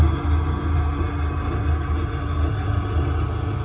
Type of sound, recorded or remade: recorded